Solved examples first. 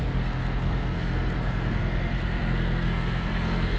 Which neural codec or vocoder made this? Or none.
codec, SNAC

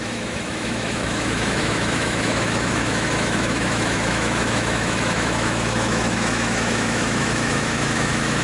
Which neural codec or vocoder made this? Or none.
autoencoder, DAC-VAE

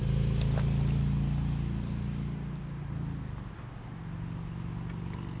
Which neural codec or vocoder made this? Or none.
none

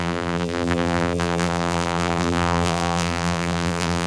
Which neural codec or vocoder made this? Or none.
vocoder, BigVGAN v2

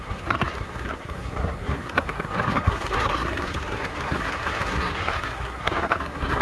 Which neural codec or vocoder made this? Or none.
codec, SNAC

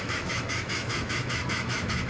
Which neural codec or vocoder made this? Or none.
autoencoder, DAC-VAE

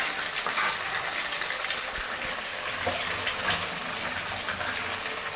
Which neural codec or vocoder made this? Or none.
none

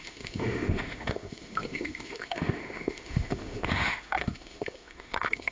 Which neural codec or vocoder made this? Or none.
autoencoder, DAC-VAE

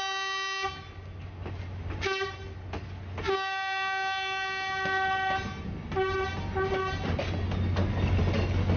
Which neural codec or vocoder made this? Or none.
none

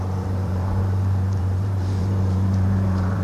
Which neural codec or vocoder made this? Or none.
vocoder, BigVGAN v2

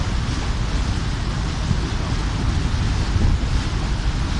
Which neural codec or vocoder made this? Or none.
none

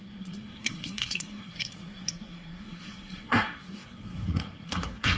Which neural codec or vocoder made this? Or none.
codec, SNAC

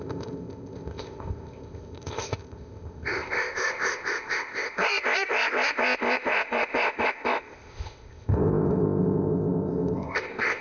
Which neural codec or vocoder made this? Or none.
codec, ZipCodec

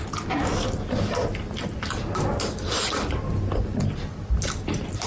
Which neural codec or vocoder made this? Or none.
none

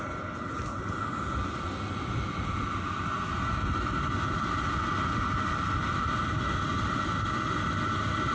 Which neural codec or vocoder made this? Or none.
none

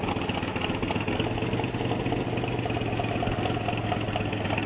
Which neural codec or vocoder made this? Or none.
none